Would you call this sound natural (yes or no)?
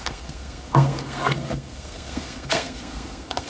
no